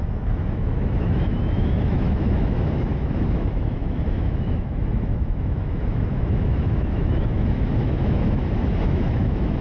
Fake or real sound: fake